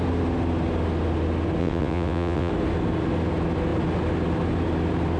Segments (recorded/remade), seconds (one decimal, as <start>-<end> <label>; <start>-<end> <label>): 0.0-1.6 recorded; 1.6-2.5 remade; 2.5-5.2 recorded

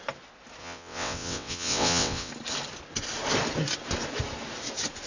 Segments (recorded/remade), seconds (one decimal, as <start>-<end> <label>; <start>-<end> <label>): 0.0-0.6 recorded; 0.6-2.3 remade; 2.3-5.1 recorded

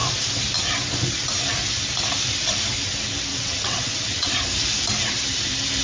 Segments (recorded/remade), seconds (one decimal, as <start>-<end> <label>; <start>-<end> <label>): 0.0-3.3 recorded; 3.3-4.3 remade; 4.3-5.8 recorded

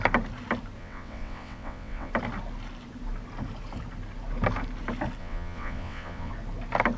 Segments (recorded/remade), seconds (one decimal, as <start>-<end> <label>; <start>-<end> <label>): 0.0-0.8 recorded; 0.8-2.1 remade; 2.1-5.2 recorded; 5.2-6.3 remade; 6.3-7.0 recorded

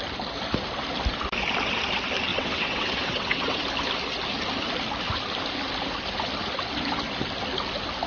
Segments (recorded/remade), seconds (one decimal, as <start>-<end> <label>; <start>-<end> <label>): 0.0-2.3 recorded; 2.3-3.6 remade; 3.6-8.1 recorded

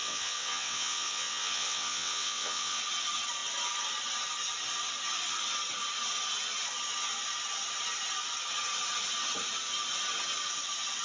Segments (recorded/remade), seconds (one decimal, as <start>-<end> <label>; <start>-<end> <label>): 0.0-2.8 remade; 2.8-11.0 recorded

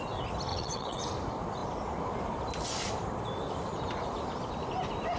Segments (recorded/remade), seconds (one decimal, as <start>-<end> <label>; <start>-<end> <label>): 0.0-0.5 recorded; 0.5-1.1 remade; 1.1-5.2 recorded